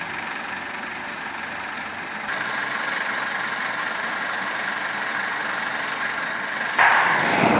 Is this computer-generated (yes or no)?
no